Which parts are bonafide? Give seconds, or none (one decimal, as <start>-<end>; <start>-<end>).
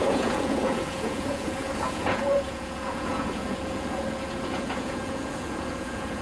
none